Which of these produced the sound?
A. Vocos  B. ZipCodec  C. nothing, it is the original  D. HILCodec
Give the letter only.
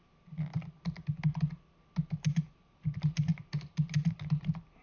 C